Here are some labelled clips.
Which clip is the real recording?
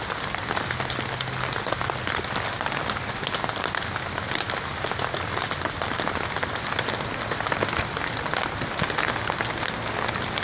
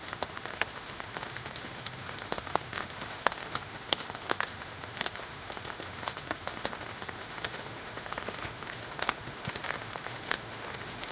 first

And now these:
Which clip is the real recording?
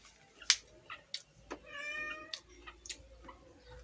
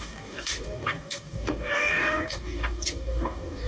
first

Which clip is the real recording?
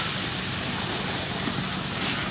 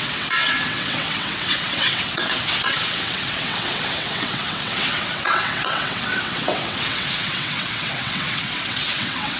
first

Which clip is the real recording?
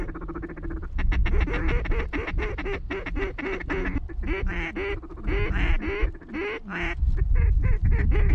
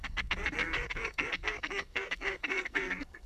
first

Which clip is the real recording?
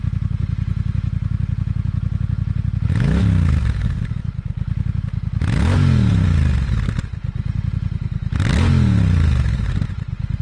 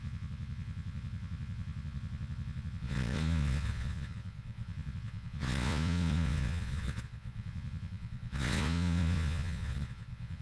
first